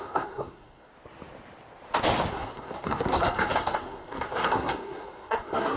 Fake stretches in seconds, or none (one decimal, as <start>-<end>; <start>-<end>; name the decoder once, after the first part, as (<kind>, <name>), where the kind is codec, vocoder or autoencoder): 0.0-0.9 (codec, SNAC); 2.3-5.8